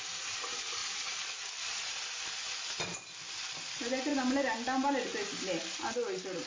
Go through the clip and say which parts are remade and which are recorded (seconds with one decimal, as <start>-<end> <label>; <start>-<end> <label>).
0.0-6.5 recorded